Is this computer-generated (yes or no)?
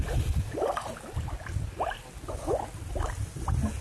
no